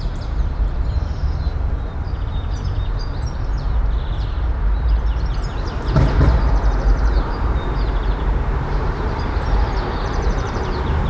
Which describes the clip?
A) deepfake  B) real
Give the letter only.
A